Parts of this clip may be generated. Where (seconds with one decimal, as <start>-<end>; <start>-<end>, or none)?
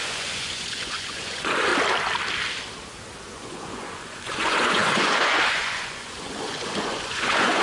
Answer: 0.0-1.7; 3.3-7.6